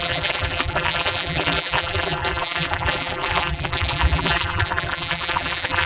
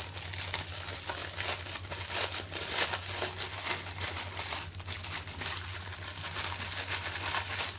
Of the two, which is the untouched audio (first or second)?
second